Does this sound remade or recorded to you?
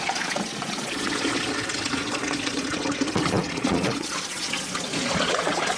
remade